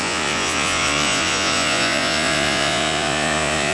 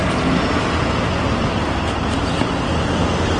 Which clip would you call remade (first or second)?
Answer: first